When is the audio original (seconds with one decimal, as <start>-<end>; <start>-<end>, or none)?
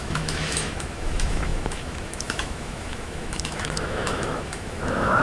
none